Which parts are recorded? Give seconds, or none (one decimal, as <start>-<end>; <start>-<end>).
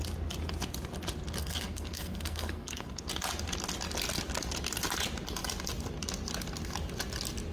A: 0.0-1.4; 3.0-7.5